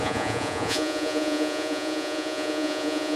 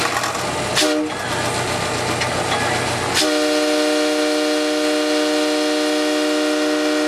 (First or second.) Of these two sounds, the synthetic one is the first